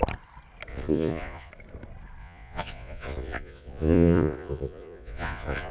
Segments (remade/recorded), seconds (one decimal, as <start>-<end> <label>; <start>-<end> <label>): 0.0-0.7 recorded; 0.7-1.5 remade; 1.5-2.2 recorded; 2.2-5.7 remade